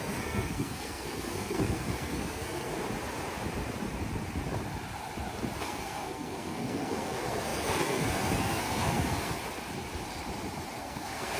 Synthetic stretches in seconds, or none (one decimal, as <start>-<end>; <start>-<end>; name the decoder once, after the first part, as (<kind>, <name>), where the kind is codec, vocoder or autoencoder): 0.0-2.7 (codec, SNAC); 5.6-9.4; 10.8-11.4